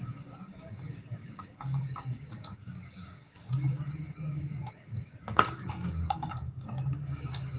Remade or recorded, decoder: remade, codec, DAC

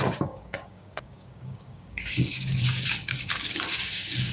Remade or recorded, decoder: remade, codec, DAC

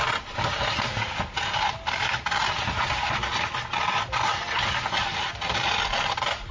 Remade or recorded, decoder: recorded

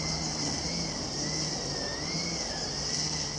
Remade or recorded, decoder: recorded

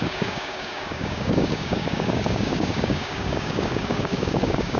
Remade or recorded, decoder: remade, codec, DAC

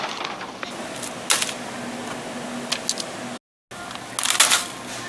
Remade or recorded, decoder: recorded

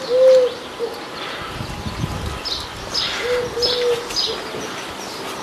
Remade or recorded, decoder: recorded